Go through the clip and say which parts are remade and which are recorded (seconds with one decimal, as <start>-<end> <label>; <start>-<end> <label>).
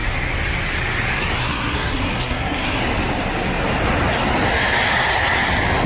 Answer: 0.0-1.4 recorded; 1.4-2.8 remade; 2.8-5.9 recorded